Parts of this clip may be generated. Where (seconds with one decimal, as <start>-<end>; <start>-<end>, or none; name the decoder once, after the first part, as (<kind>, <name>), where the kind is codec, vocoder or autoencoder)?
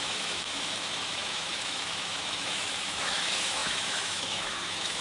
0.0-5.0 (autoencoder, DAC-VAE)